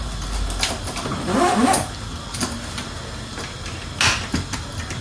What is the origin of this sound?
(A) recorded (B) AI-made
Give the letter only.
A